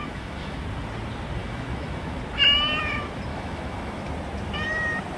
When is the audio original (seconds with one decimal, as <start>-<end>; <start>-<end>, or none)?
0.6-1.4; 2.2-3.3; 4.0-5.2